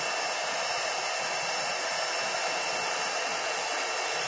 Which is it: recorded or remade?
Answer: recorded